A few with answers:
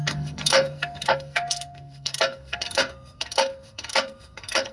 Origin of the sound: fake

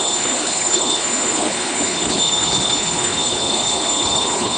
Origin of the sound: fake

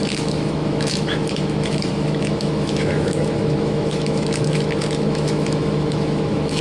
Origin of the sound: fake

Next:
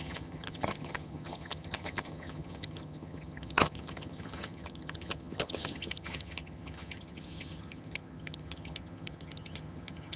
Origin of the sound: fake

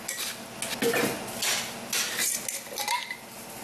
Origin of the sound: real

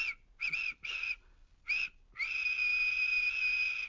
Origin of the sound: real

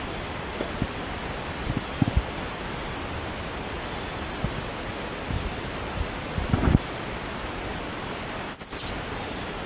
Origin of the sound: real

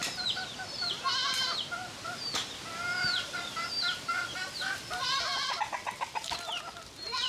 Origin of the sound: real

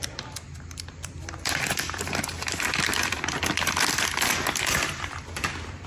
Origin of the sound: fake